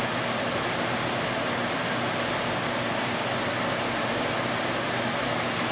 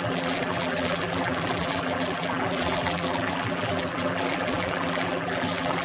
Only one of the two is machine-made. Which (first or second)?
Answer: second